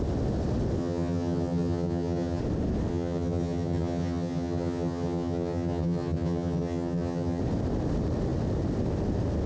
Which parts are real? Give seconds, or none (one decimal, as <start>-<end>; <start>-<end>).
0.0-0.8; 2.4-2.9; 7.4-9.5